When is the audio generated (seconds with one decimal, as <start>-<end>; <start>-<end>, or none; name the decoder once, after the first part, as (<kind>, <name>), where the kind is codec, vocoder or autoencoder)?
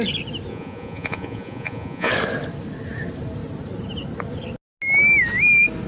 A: 0.5-2.1 (vocoder, Vocos)